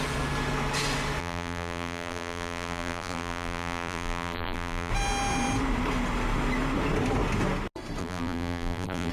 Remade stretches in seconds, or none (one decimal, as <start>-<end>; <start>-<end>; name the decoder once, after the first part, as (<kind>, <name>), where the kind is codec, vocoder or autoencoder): 1.2-4.9 (vocoder, BigVGAN v2); 8.0-9.1